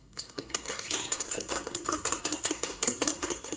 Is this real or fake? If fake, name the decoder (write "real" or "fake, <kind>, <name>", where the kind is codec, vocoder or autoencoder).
fake, codec, SNAC